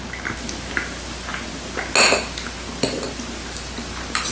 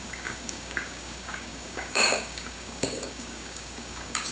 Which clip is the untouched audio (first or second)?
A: first